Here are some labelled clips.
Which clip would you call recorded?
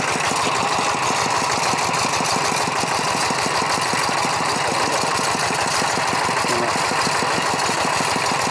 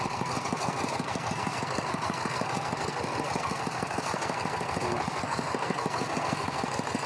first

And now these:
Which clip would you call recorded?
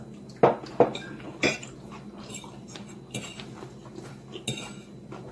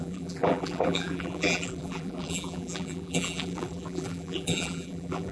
first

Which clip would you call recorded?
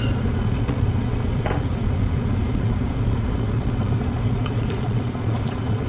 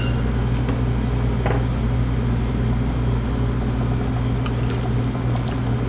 second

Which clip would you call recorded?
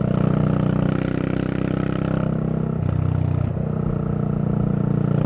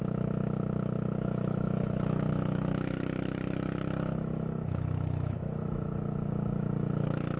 first